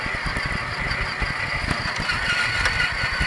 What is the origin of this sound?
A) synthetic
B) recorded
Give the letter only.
B